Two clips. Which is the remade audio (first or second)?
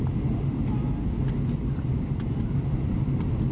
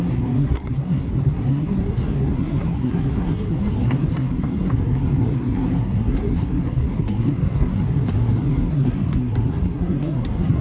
second